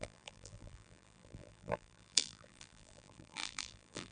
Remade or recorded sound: remade